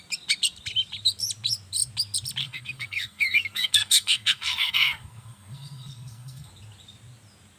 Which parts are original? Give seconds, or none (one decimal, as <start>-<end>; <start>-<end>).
0.0-2.4; 6.5-7.6